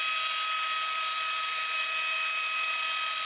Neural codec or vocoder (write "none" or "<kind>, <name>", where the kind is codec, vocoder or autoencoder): none